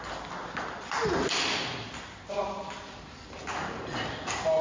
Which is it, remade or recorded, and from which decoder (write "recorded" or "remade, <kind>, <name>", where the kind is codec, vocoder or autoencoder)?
recorded